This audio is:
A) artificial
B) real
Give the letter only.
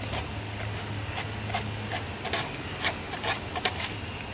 B